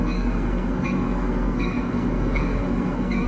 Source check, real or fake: fake